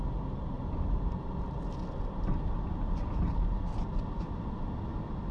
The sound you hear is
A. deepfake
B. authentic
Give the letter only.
B